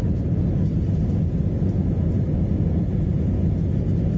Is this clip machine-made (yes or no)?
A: no